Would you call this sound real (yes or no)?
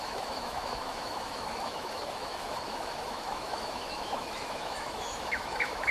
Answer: no